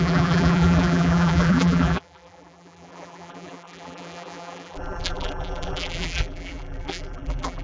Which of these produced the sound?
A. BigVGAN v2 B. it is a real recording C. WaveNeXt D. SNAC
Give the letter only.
A